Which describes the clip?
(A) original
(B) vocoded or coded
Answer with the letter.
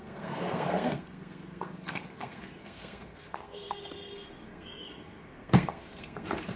B